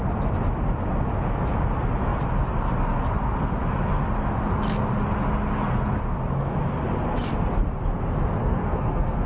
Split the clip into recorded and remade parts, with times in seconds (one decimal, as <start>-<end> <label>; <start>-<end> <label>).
0.0-8.4 recorded; 8.4-9.3 remade